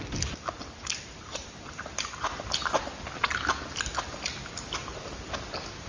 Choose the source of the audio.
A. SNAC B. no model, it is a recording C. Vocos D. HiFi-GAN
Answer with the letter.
B